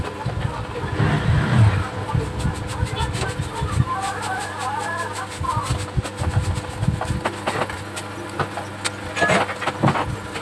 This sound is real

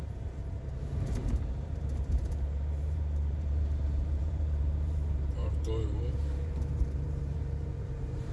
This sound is fake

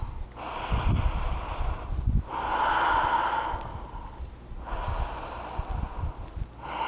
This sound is real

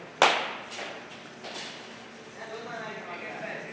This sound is real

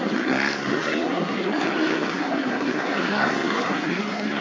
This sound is fake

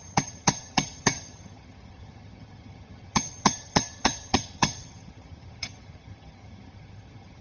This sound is fake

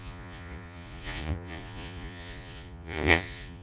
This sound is fake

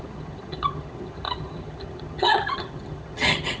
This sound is fake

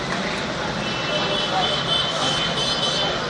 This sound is real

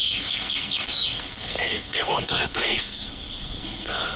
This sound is fake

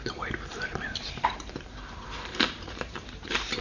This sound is fake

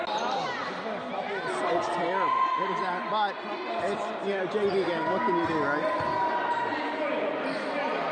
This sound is real